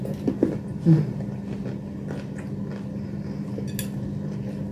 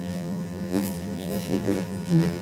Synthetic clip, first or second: second